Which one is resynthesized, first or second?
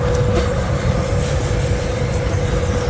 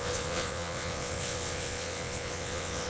second